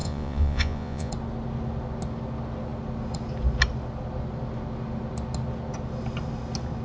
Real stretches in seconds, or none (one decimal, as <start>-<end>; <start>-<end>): 1.1-6.8